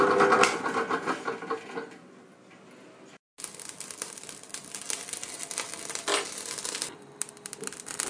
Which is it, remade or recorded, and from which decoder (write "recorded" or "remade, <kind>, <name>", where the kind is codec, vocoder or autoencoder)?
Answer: recorded